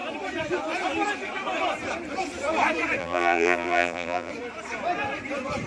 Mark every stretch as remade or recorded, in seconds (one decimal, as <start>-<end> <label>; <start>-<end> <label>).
0.0-3.0 recorded; 3.0-4.3 remade; 4.3-5.7 recorded